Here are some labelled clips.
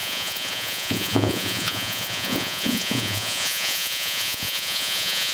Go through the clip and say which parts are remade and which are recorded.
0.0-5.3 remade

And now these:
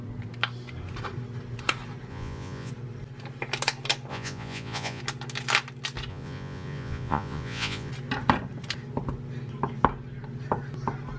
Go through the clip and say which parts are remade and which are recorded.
0.0-2.1 recorded; 2.1-2.7 remade; 2.7-4.1 recorded; 4.1-5.0 remade; 5.0-6.1 recorded; 6.1-7.9 remade; 7.9-11.2 recorded

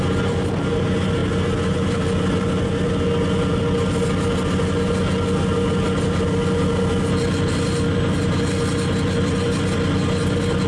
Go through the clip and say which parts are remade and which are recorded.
0.0-10.7 recorded

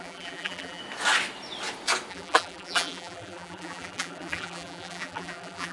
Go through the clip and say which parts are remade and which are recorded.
0.0-0.8 remade; 0.8-2.1 recorded; 2.1-5.7 remade

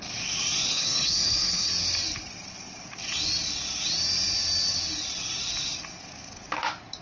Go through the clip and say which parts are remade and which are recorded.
0.0-0.7 recorded; 0.7-1.7 remade; 1.7-7.0 recorded

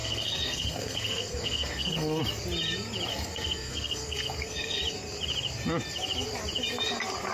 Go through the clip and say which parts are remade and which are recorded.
0.0-2.2 remade; 2.2-3.1 recorded; 3.1-4.8 remade; 4.8-7.3 recorded

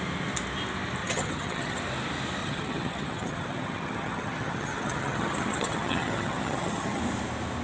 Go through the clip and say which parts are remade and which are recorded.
0.0-1.0 recorded; 1.0-1.8 remade; 1.8-2.4 recorded; 2.4-7.0 remade; 7.0-7.6 recorded